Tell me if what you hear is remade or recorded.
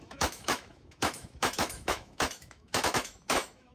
remade